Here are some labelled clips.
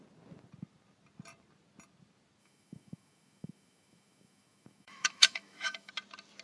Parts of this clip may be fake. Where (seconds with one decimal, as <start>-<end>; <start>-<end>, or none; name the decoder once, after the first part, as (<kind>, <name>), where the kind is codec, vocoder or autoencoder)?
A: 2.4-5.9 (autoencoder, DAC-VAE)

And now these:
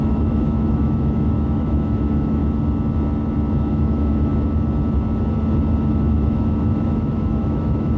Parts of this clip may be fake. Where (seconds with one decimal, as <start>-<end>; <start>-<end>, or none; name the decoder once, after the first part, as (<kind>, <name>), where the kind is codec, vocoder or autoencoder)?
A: 0.0-2.4 (autoencoder, DAC-VAE); 3.7-4.3; 5.8-8.0

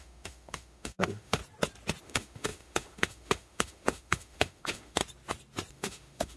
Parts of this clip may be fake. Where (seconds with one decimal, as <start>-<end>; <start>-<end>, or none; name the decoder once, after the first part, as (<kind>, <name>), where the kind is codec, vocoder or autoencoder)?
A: 0.0-1.4 (autoencoder, DAC-VAE); 2.0-5.0; 5.7-6.4